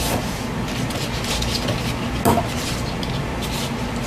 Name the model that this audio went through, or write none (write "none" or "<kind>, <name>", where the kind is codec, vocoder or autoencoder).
none